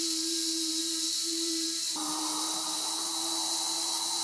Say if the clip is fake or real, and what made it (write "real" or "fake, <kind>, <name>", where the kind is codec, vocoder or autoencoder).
fake, vocoder, BigVGAN v2